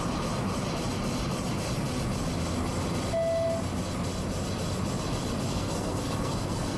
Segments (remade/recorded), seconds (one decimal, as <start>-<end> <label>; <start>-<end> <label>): 0.0-5.5 recorded; 5.5-6.8 remade